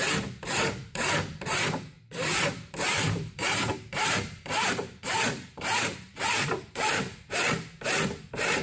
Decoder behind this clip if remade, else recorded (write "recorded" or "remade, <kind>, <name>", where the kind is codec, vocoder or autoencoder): remade, vocoder, BigVGAN v2